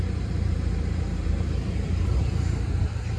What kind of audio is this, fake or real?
fake